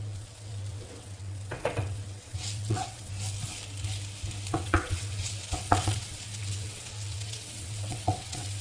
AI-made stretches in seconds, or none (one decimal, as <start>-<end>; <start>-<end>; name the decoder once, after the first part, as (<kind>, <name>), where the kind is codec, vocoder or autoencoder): 0.0-3.1 (vocoder, WaveNeXt); 4.5-8.6